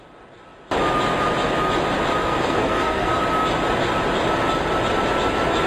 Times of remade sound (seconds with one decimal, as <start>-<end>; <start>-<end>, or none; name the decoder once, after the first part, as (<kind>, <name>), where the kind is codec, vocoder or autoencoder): 2.2-3.2 (codec, SNAC)